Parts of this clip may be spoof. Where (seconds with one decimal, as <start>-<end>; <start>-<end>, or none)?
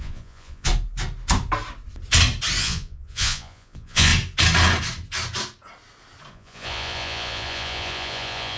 0.0-0.7; 2.6-4.1; 6.3-8.6